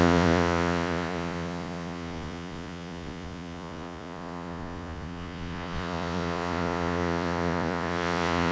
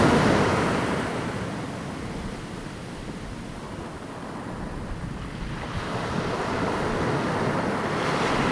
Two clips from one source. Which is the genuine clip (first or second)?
second